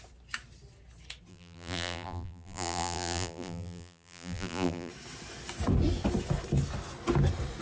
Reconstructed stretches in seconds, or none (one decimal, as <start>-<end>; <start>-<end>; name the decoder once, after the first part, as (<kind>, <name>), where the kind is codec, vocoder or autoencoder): 1.3-4.9 (vocoder, BigVGAN v2)